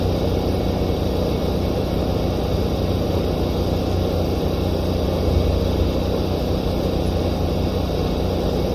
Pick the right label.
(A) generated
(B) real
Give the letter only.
B